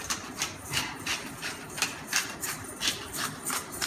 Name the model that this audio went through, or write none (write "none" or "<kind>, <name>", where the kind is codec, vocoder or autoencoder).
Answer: vocoder, BigVGAN v2